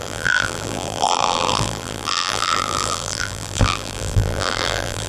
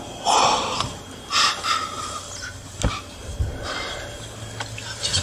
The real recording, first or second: second